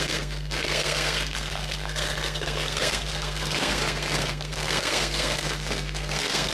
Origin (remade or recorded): remade